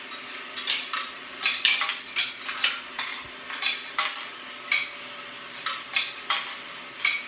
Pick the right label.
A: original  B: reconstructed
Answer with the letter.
A